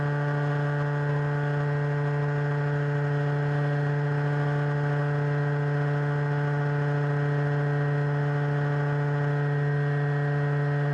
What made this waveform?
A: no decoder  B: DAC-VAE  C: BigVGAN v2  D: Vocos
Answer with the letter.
A